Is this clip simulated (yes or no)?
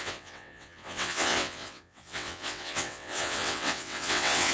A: yes